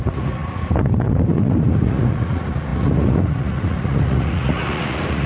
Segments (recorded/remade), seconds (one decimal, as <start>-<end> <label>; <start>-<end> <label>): 0.0-5.3 remade